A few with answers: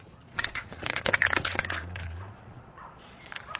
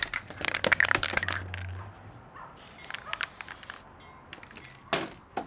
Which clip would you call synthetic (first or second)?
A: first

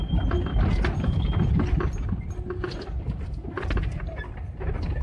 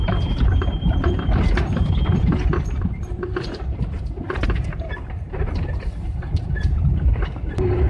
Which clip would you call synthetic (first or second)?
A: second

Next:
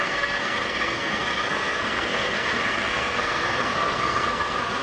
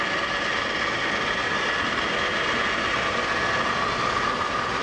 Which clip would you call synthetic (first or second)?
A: first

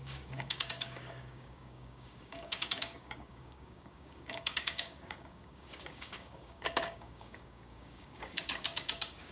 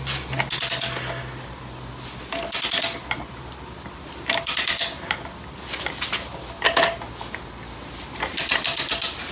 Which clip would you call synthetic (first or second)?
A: first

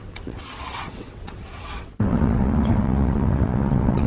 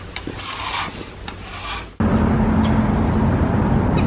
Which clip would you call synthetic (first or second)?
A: first